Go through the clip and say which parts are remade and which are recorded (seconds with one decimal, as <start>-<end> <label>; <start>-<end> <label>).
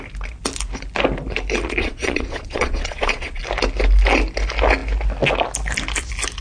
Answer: 0.0-1.8 recorded; 1.8-3.4 remade; 3.4-6.4 recorded